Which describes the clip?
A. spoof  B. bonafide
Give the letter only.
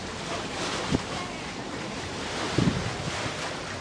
B